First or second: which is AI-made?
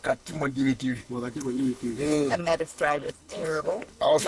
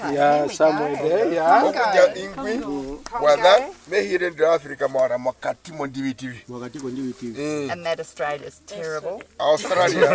first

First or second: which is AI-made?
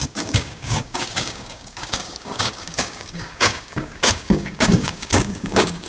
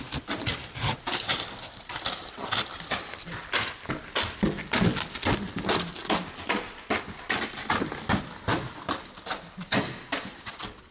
first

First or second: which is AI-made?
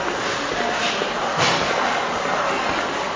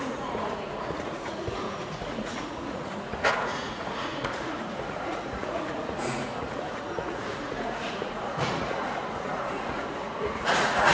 second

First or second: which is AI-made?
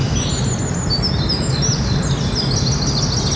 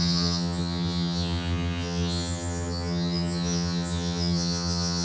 second